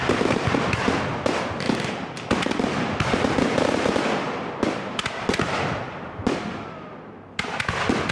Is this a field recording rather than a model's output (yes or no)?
yes